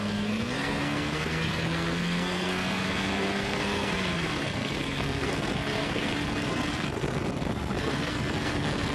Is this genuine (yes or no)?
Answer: no